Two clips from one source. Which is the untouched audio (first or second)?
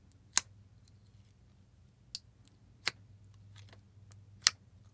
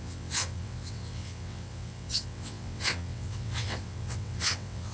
first